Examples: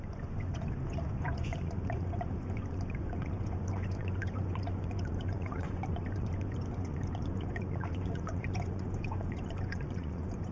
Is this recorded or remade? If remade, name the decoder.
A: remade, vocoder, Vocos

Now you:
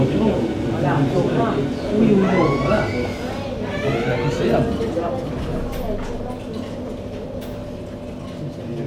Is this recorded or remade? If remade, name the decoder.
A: recorded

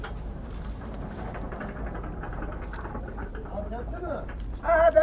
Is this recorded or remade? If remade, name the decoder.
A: remade, vocoder, BigVGAN v2